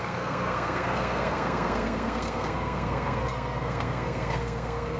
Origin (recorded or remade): remade